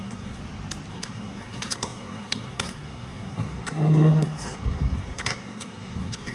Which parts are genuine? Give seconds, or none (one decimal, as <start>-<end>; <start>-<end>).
0.4-0.9